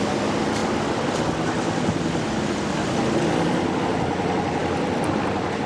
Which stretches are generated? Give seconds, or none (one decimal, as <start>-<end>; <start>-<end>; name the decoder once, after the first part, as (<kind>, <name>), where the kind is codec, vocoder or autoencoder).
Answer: none